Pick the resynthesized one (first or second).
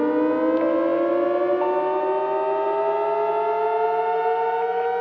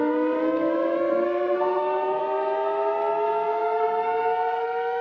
second